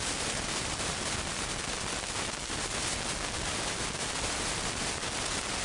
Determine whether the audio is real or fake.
real